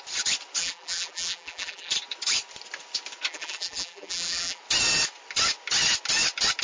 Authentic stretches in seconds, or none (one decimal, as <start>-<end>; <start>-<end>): 0.0-0.6; 1.9-3.3; 4.6-6.6